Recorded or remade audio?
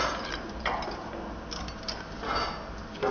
recorded